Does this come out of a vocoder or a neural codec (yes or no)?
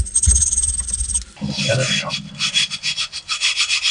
no